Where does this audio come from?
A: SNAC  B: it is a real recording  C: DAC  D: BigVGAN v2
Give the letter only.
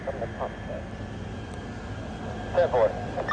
B